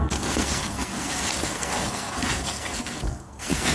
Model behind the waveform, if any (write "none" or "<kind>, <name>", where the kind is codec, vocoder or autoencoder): codec, SNAC